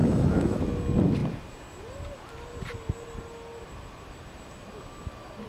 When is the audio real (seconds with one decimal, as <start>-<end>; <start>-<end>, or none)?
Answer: 0.6-5.5